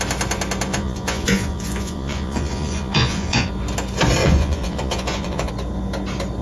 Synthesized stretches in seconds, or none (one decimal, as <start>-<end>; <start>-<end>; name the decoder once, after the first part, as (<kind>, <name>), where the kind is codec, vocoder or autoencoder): 0.7-3.5 (vocoder, Vocos); 4.2-5.5